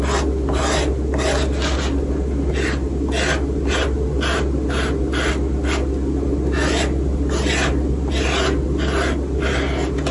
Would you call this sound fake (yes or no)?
no